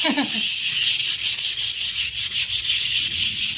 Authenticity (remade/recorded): remade